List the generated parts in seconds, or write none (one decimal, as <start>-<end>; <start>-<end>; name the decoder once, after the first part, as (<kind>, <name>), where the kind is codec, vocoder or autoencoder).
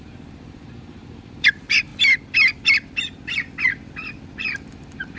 0.0-1.9 (vocoder, BigVGAN v2); 4.4-5.2